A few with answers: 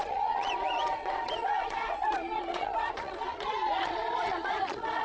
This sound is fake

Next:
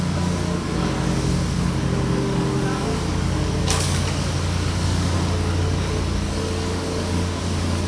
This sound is fake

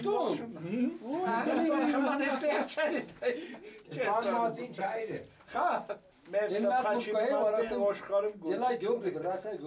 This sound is real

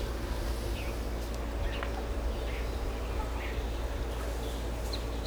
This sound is real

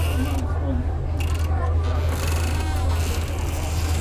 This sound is real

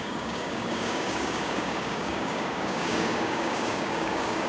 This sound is fake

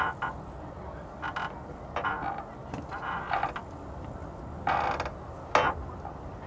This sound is real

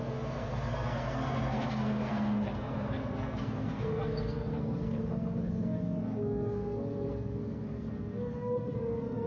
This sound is fake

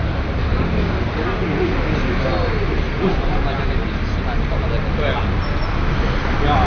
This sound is real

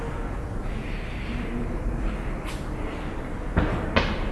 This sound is real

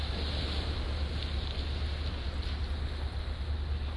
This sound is real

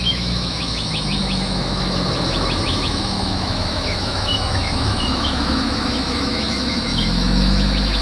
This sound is fake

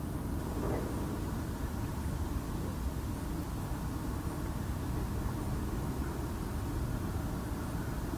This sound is real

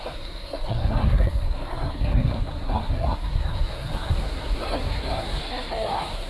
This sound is fake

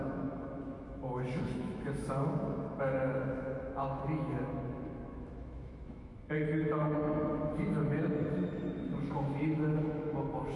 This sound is fake